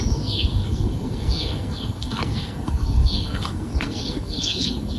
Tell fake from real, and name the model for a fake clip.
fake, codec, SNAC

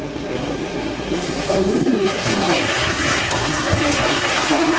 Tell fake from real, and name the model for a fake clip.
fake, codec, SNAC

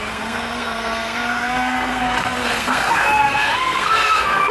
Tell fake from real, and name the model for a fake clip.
fake, codec, SNAC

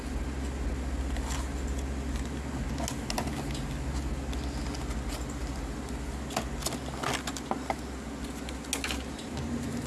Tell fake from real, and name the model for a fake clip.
real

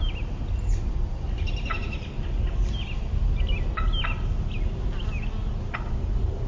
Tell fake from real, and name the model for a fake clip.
real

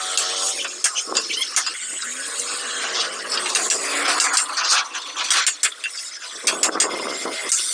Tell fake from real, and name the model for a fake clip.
real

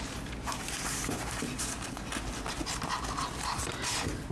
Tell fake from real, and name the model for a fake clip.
real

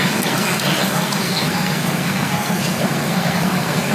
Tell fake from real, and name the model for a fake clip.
fake, codec, SNAC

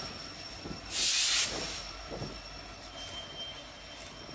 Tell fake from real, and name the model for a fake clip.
real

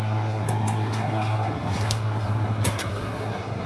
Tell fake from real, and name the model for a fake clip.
fake, codec, SNAC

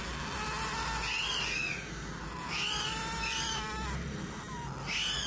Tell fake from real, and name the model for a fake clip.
real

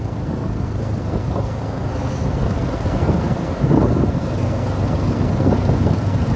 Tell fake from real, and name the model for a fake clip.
fake, codec, SNAC